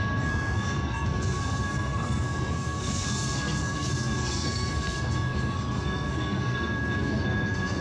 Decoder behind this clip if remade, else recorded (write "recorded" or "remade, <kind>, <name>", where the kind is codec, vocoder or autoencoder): remade, codec, SNAC